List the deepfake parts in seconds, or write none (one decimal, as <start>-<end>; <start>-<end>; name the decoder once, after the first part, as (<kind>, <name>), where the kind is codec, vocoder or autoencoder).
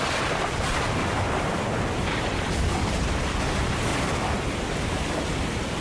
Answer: 1.0-3.4 (vocoder, BigVGAN v2); 3.9-4.9